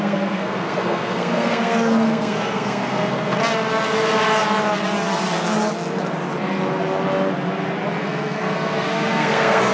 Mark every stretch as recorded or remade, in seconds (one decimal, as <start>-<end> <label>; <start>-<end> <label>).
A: 0.0-3.4 remade; 3.4-8.0 recorded; 8.0-9.7 remade